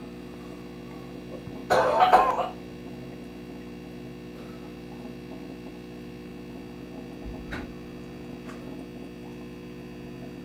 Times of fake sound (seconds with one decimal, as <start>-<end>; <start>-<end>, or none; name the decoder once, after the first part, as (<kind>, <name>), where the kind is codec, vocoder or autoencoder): none